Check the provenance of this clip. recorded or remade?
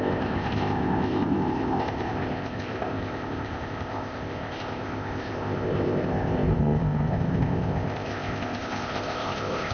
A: remade